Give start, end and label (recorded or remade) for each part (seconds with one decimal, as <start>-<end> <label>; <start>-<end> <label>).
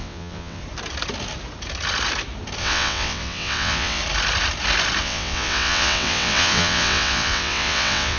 0.0-0.6 remade; 0.6-2.6 recorded; 2.6-4.0 remade; 4.0-5.0 recorded; 5.0-8.2 remade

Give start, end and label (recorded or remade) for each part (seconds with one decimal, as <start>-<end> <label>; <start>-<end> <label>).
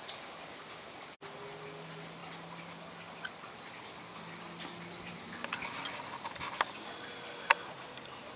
0.0-8.4 recorded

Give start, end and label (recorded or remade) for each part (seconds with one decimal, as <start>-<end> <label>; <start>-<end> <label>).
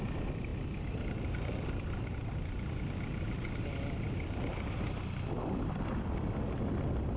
0.0-7.2 recorded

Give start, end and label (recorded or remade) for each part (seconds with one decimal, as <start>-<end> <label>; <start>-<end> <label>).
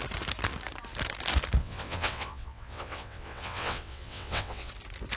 0.0-1.6 recorded; 1.6-4.7 remade; 4.7-5.2 recorded